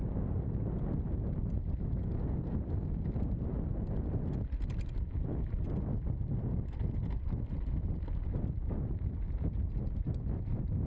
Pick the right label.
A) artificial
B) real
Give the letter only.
B